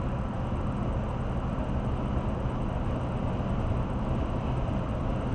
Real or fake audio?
real